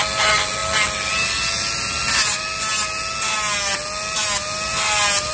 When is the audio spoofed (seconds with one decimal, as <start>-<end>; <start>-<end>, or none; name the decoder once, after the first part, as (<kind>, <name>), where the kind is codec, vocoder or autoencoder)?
none